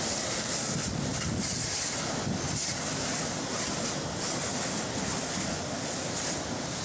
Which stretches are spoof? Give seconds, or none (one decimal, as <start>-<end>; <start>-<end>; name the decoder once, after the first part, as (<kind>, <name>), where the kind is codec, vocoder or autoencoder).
none